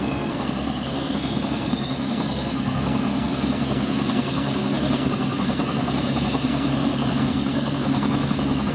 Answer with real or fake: fake